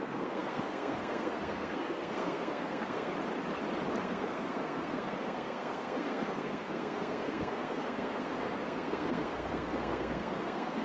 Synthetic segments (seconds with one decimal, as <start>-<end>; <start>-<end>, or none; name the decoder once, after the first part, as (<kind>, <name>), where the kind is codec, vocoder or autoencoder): 0.0-3.1 (codec, SNAC); 4.0-10.8

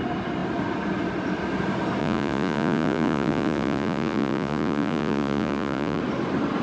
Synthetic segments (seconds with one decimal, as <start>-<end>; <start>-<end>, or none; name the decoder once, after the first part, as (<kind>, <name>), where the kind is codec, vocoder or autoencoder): 2.0-6.0 (vocoder, Vocos)

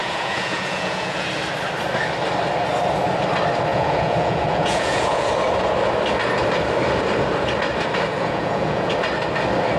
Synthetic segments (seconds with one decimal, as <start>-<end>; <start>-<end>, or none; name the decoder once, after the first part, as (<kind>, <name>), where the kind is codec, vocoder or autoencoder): 0.0-1.3 (vocoder, Vocos); 3.7-5.3; 8.1-8.9